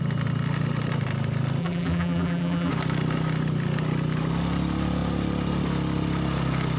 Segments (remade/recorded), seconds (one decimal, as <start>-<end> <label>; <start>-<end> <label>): 0.0-1.6 recorded; 1.6-2.7 remade; 2.7-6.8 recorded